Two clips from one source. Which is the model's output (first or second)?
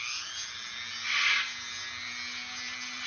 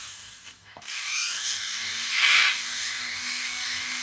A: second